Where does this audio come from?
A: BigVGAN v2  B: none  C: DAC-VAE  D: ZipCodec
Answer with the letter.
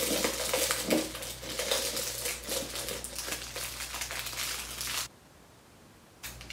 B